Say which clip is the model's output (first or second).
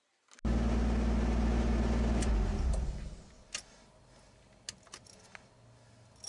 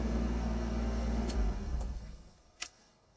second